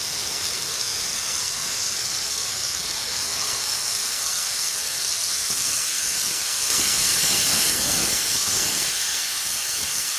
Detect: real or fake fake